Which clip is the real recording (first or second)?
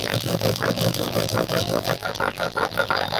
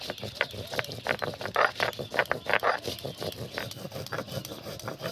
second